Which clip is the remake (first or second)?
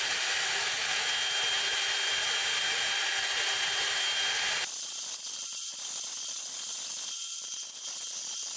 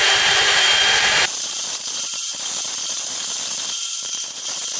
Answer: second